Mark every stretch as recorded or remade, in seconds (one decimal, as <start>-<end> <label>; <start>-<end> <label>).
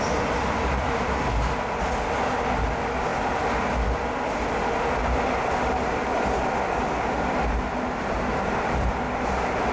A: 0.0-5.0 recorded; 5.0-6.4 remade; 6.4-8.3 recorded; 8.3-9.0 remade; 9.0-9.7 recorded